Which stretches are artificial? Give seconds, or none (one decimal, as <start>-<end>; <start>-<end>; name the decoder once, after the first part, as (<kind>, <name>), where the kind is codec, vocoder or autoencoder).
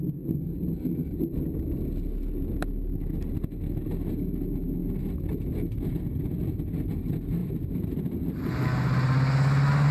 4.8-6.9 (vocoder, BigVGAN v2); 7.4-8.0